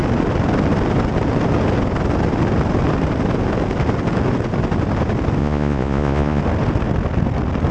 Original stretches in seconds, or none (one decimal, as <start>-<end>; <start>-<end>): 0.0-5.4; 6.4-7.7